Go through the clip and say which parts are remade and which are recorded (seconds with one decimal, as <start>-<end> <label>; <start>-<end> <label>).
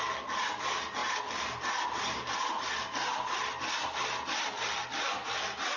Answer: 0.0-5.8 recorded